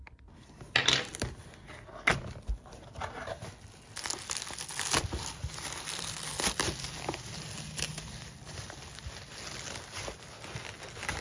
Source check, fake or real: real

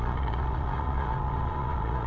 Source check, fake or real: fake